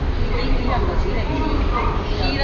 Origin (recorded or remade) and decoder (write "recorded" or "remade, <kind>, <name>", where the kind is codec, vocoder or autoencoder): recorded